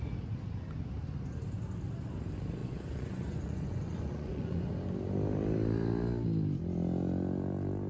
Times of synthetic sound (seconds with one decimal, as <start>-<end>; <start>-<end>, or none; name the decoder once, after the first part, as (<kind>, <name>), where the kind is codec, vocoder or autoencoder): 2.6-4.7 (vocoder, Vocos)